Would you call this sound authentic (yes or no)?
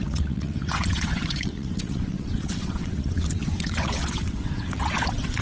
no